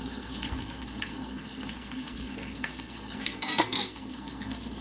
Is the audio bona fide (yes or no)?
no